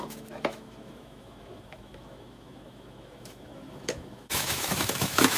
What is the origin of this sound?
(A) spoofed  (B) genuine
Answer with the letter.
A